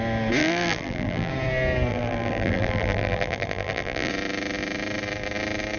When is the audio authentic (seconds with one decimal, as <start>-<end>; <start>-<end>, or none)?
0.0-0.4; 1.3-1.9; 4.1-5.8